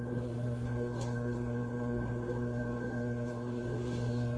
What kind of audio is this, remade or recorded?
remade